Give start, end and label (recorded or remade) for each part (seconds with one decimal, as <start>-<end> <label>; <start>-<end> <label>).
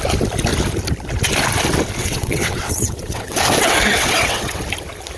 0.0-2.0 recorded; 2.0-4.6 remade; 4.6-5.2 recorded